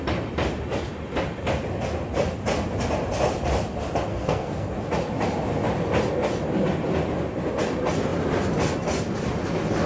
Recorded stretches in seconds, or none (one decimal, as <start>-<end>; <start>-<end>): 0.0-4.1; 4.7-9.9